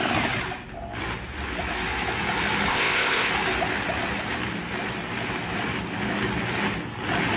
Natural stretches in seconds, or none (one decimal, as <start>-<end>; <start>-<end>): 0.0-2.7; 3.3-7.4